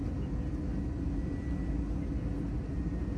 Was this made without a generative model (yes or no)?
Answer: yes